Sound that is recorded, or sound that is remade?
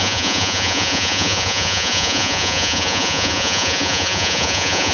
remade